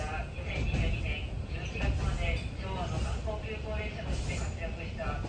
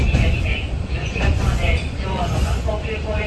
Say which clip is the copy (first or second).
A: second